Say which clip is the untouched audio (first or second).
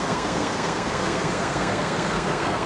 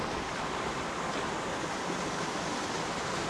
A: second